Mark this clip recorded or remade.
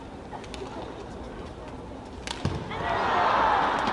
recorded